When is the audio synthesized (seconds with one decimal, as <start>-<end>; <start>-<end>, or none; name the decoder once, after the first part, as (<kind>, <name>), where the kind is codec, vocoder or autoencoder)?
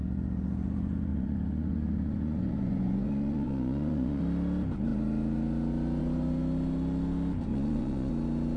1.1-4.2 (vocoder, Vocos); 7.5-8.1